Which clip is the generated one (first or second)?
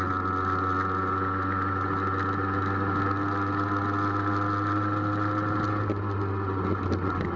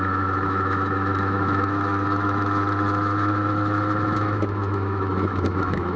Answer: second